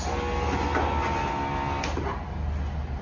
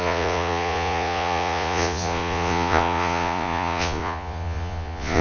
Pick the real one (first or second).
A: first